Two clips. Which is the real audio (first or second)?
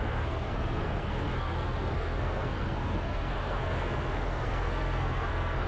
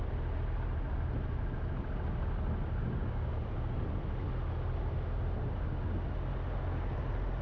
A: second